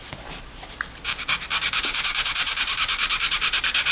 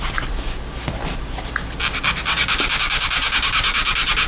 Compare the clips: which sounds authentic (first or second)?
second